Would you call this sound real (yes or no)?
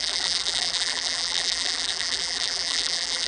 no